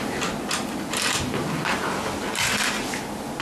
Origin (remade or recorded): recorded